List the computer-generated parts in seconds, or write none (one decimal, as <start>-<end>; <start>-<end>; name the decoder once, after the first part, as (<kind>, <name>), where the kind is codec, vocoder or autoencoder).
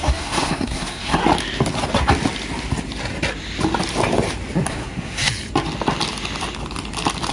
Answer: 0.0-1.2 (codec, SNAC); 4.7-5.3